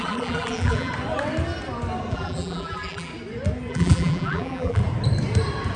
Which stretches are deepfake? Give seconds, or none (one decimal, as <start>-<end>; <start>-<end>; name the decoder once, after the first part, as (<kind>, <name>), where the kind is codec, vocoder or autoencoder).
0.0-0.9 (vocoder, BigVGAN v2); 2.1-3.1; 3.7-4.8